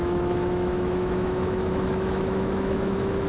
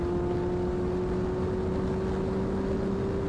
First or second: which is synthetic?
first